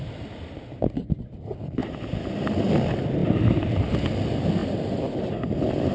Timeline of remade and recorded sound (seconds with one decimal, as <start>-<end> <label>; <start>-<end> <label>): 0.0-5.9 recorded